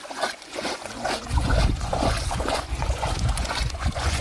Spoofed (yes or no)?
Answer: yes